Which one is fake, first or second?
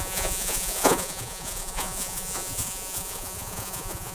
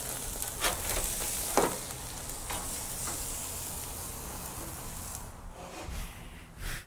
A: first